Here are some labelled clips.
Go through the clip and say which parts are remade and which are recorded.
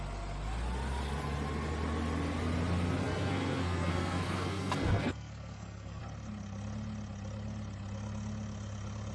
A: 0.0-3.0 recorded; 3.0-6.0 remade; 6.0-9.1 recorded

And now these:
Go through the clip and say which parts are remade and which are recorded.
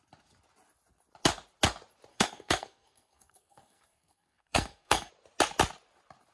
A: 0.0-2.1 recorded; 2.1-5.1 remade; 5.1-6.3 recorded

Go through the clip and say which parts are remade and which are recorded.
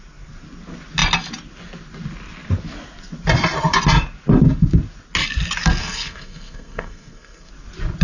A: 0.0-5.8 recorded; 5.8-7.5 remade; 7.5-8.0 recorded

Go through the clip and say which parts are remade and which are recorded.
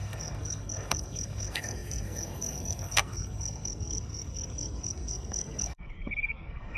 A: 0.0-6.8 remade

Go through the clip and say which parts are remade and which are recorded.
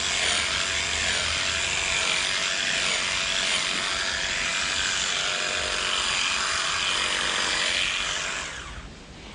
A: 0.0-9.3 recorded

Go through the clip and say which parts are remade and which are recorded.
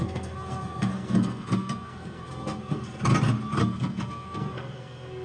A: 0.0-3.1 remade; 3.1-3.6 recorded; 3.6-5.2 remade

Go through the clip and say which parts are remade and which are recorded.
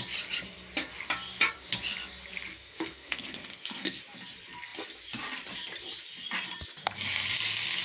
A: 0.0-2.5 recorded; 2.5-4.0 remade; 4.0-7.8 recorded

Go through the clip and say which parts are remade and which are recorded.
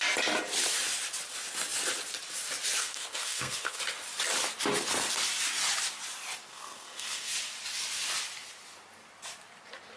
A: 0.0-2.8 recorded; 2.8-3.8 remade; 3.8-6.5 recorded; 6.5-7.3 remade; 7.3-10.0 recorded